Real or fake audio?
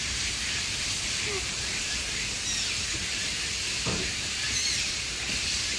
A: fake